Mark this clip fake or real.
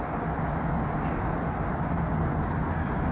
real